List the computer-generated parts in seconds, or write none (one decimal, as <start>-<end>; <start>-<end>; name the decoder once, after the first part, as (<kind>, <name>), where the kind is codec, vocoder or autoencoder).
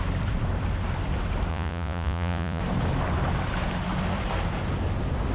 1.5-2.6 (vocoder, Vocos)